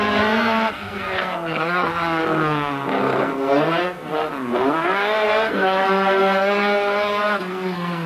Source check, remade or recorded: remade